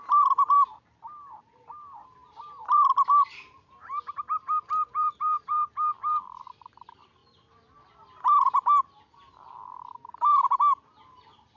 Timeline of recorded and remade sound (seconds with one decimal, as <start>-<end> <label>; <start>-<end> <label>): 0.0-7.2 remade; 7.2-10.6 recorded; 10.6-11.6 remade